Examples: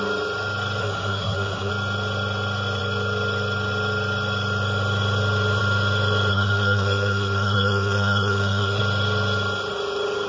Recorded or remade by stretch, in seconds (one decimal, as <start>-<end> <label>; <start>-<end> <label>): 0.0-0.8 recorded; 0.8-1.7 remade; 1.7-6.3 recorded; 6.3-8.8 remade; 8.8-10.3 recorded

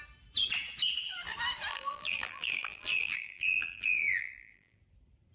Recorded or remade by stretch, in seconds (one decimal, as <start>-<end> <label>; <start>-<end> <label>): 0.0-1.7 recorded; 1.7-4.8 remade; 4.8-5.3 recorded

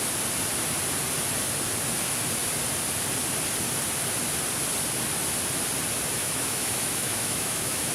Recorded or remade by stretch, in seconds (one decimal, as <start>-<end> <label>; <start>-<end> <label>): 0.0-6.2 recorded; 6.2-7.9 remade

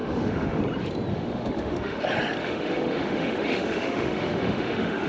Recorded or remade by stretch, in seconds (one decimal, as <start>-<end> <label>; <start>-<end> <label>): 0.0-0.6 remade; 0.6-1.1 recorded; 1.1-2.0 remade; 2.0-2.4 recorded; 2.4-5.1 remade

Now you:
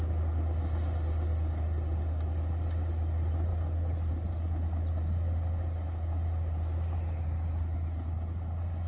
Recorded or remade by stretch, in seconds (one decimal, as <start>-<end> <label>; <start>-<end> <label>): 0.0-8.9 recorded

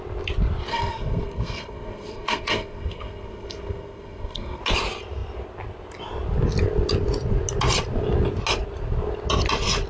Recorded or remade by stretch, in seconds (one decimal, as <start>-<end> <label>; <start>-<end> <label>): 0.0-0.7 recorded; 0.7-4.6 remade; 4.6-9.9 recorded

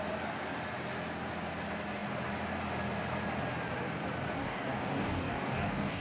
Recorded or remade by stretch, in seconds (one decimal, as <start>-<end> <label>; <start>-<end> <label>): 0.0-4.4 recorded; 4.4-6.0 remade

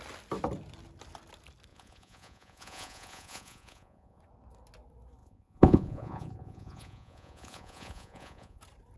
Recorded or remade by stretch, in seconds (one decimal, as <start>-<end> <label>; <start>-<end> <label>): 0.0-1.7 recorded; 1.7-4.2 remade; 4.2-5.2 recorded; 5.2-8.6 remade; 8.6-9.0 recorded